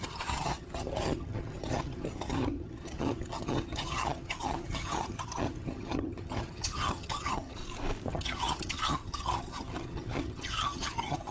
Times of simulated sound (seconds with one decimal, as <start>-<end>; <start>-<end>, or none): 0.0-7.6; 8.1-11.3